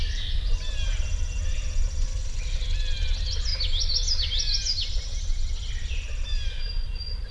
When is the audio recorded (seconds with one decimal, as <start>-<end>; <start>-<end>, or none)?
0.0-7.3